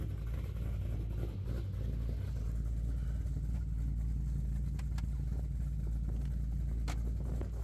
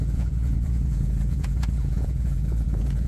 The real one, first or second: first